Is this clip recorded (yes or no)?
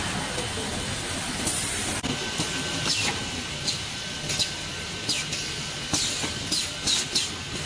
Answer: yes